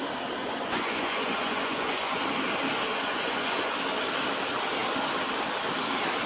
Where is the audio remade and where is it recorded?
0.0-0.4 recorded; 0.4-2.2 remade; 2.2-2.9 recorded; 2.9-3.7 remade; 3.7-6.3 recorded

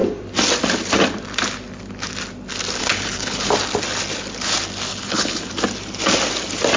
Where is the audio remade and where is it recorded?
0.0-2.8 recorded; 2.8-3.5 remade; 3.5-4.9 recorded; 4.9-5.5 remade; 5.5-6.8 recorded

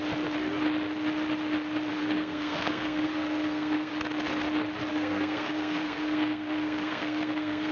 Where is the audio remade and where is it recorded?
0.0-1.9 recorded; 1.9-3.9 remade; 3.9-4.9 recorded; 4.9-7.7 remade

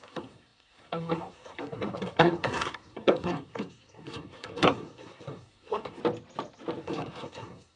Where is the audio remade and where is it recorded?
0.0-6.0 remade; 6.0-6.8 recorded; 6.8-7.8 remade

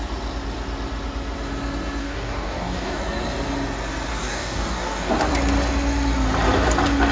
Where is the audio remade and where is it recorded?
0.0-2.0 recorded; 2.0-3.0 remade; 3.0-4.1 recorded; 4.1-5.1 remade; 5.1-7.1 recorded

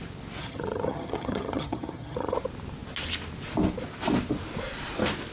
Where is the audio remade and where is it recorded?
0.0-0.4 recorded; 0.4-2.4 remade; 2.4-5.3 recorded

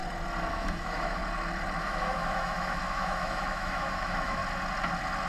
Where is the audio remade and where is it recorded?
0.0-0.5 recorded; 0.5-1.2 remade; 1.2-1.8 recorded; 1.8-4.4 remade; 4.4-5.3 recorded

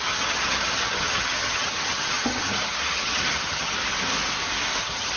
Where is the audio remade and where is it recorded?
0.0-3.8 remade; 3.8-4.8 recorded; 4.8-5.2 remade